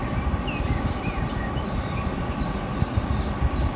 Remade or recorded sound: recorded